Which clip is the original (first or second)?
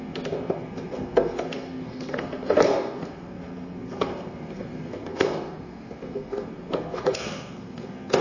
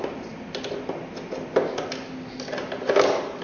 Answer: second